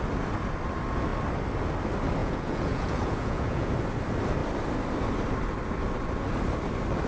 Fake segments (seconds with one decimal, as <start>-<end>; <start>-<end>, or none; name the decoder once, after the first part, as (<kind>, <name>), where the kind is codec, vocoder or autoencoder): 2.2-3.7 (vocoder, Vocos)